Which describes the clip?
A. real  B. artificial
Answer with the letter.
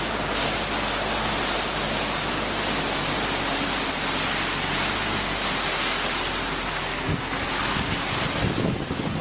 A